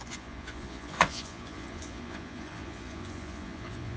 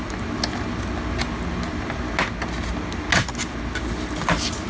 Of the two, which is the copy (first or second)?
first